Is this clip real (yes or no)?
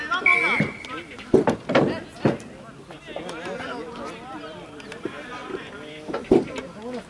yes